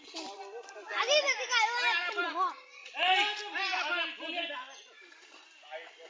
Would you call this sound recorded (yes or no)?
yes